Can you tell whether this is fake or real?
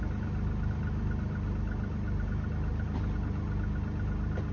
real